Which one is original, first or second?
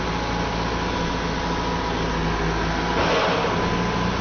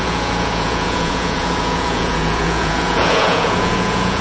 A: first